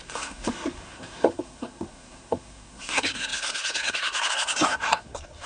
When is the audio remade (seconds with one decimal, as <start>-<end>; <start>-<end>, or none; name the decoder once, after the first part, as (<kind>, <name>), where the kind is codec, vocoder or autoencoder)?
0.0-5.5 (codec, SNAC)